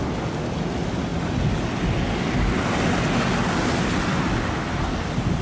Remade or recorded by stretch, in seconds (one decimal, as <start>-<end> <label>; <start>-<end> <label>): 0.0-5.4 recorded